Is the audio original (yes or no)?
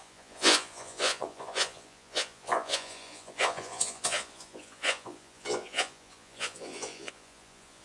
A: no